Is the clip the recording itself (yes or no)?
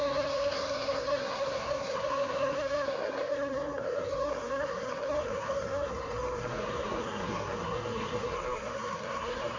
no